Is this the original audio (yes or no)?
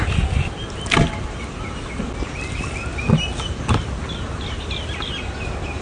yes